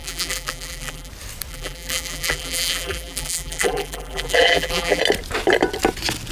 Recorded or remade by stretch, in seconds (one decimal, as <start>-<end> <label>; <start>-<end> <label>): 0.0-1.1 remade; 1.1-1.5 recorded; 1.5-5.0 remade; 5.0-6.3 recorded